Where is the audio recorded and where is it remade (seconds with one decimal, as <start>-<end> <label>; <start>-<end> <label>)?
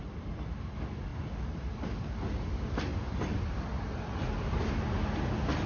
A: 0.0-5.7 recorded